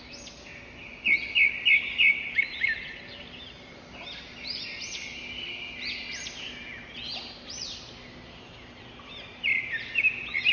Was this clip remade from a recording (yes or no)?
no